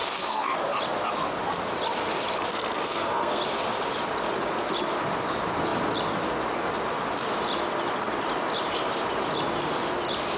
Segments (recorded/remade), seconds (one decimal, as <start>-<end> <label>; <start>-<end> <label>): 0.0-0.6 remade; 0.6-2.5 recorded; 2.5-3.4 remade; 3.4-10.4 recorded